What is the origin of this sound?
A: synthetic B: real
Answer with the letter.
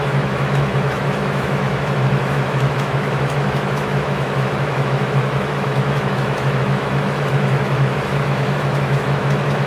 A